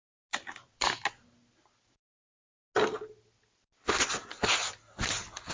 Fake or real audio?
real